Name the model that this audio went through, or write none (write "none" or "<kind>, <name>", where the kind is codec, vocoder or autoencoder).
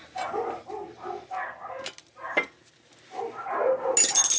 none